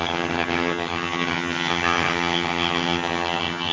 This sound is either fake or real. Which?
fake